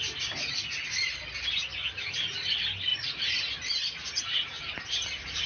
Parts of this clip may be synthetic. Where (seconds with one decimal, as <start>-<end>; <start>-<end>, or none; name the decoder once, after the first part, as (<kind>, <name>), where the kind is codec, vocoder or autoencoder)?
none